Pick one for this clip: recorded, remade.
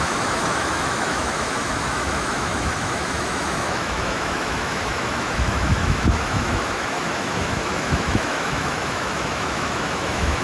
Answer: remade